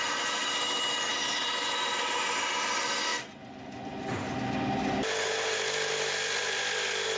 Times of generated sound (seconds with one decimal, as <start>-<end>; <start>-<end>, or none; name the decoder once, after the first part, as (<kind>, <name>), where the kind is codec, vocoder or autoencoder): none